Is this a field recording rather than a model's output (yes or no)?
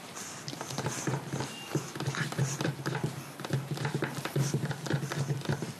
no